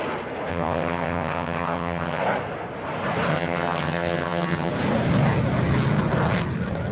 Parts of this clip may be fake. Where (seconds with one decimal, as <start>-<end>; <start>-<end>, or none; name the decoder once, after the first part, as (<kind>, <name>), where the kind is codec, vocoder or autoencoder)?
0.5-2.2 (vocoder, HiFi-GAN); 3.3-4.7

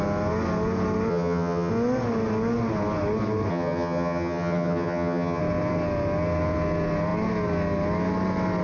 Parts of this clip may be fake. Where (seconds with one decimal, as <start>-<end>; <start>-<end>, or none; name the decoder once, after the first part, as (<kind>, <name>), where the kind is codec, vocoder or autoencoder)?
1.1-1.7 (vocoder, HiFi-GAN); 3.5-5.4

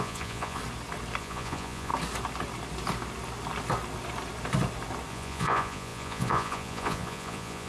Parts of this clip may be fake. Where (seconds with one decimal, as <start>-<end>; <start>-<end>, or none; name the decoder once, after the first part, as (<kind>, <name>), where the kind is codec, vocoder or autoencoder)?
0.0-0.6 (vocoder, Vocos); 1.2-1.9; 5.1-7.7

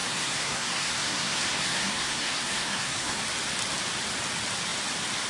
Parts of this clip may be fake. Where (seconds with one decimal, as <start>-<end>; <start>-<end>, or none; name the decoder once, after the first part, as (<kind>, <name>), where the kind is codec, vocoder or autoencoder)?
0.0-3.2 (codec, SNAC)

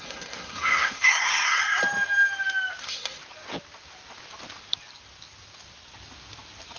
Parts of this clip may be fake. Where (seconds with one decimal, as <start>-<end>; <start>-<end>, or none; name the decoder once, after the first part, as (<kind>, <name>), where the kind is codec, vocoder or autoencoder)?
0.0-1.6 (codec, SNAC); 2.8-3.2

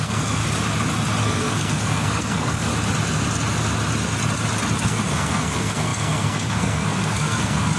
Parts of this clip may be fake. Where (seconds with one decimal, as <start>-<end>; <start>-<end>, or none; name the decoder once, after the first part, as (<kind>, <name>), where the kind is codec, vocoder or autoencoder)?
0.0-0.4 (codec, SNAC); 1.2-2.7; 4.8-7.8

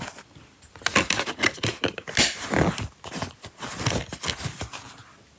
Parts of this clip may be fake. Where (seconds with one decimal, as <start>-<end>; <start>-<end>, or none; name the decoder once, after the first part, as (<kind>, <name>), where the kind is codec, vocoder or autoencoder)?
none

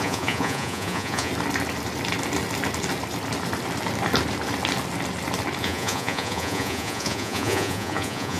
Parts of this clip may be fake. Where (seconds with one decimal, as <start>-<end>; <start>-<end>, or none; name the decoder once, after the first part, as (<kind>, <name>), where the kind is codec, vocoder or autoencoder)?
0.0-1.3 (vocoder, Vocos); 5.6-8.4